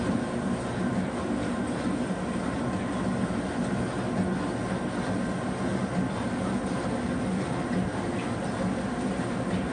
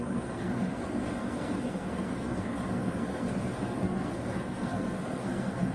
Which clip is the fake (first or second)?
second